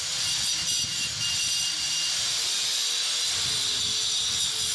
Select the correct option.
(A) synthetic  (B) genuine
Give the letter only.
B